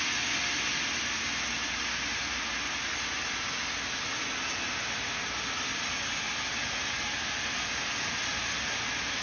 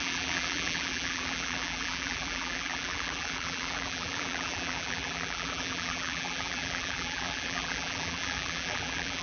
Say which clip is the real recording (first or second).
first